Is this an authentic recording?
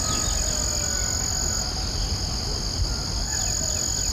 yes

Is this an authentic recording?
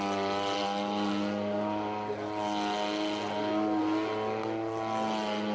yes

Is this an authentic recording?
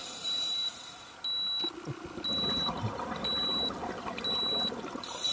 yes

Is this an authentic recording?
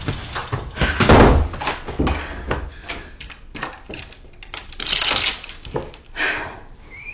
yes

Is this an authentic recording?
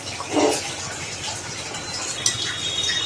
yes